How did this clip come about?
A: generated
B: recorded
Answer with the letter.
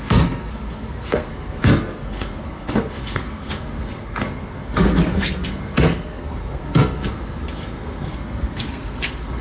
A